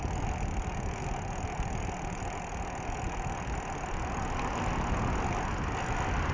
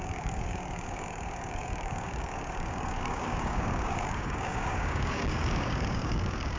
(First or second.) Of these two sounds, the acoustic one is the first